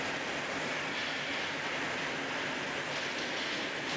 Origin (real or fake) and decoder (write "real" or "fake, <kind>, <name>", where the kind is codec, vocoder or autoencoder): real